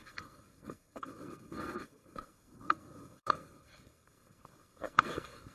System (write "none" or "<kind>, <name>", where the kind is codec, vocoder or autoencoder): codec, SNAC